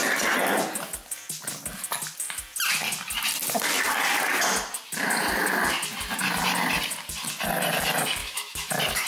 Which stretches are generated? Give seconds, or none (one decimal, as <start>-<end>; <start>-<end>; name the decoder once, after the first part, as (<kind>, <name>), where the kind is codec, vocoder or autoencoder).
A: 8.2-8.7 (autoencoder, DAC-VAE)